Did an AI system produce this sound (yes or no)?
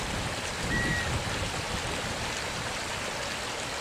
no